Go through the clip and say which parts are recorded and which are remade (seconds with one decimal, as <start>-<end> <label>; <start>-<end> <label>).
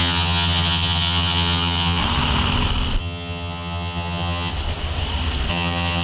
0.0-2.0 remade; 2.0-3.0 recorded; 3.0-4.5 remade; 4.5-5.5 recorded; 5.5-6.0 remade